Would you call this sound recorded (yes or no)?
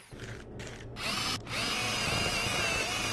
yes